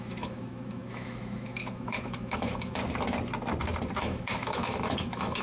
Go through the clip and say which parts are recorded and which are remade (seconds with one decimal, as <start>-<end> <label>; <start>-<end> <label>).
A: 0.0-2.8 remade; 2.8-4.0 recorded; 4.0-5.4 remade